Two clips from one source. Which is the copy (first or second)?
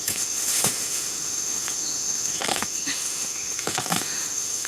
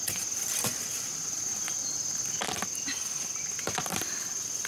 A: first